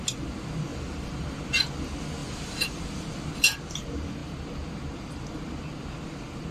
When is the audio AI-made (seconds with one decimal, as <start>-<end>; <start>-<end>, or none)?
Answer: 0.7-1.4; 2.2-2.8